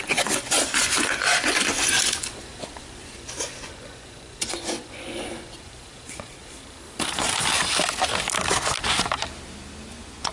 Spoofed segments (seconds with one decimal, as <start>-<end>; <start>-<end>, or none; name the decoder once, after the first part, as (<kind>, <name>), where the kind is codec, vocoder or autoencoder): 0.0-6.4 (vocoder, Vocos); 9.9-10.3